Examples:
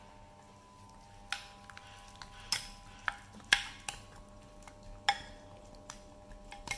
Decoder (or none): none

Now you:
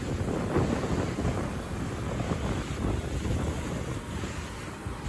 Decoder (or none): none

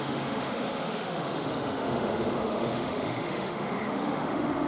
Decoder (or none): autoencoder, DAC-VAE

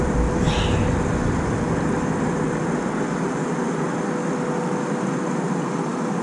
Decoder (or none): none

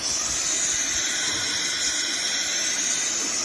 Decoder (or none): none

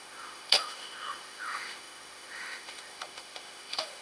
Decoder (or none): autoencoder, DAC-VAE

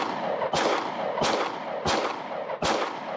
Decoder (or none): none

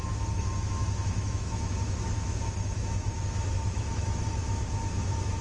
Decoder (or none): autoencoder, DAC-VAE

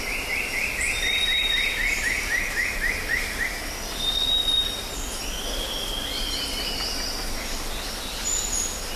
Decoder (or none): none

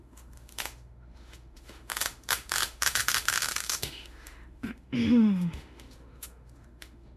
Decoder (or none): autoencoder, DAC-VAE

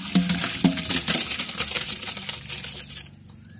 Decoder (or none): none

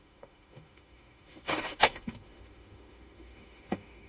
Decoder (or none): autoencoder, DAC-VAE